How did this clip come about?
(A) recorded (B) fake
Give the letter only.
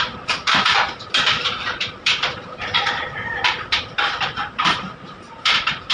B